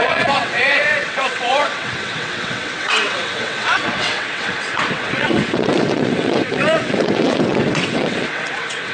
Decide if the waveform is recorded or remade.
remade